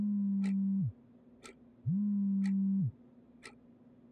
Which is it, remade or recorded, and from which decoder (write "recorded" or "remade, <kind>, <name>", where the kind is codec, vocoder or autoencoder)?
recorded